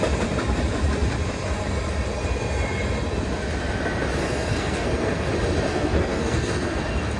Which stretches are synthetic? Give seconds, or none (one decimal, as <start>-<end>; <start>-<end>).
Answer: 4.2-5.3; 5.7-6.8